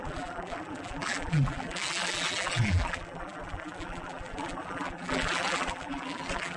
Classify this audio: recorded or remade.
remade